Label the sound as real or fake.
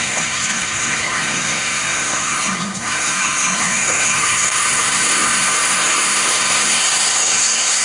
fake